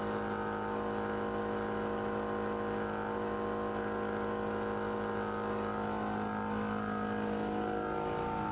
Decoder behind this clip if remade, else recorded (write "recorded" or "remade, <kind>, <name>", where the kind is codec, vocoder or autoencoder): recorded